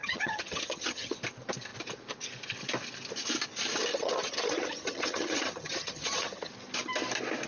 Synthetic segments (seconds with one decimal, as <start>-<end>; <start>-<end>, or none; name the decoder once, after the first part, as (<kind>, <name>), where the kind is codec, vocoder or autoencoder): 0.0-1.1 (vocoder, HiFi-GAN); 3.9-6.5